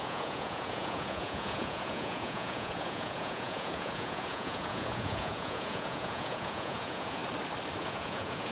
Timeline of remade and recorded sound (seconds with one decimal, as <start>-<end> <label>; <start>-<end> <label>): 0.0-7.2 remade; 7.2-7.8 recorded; 7.8-8.5 remade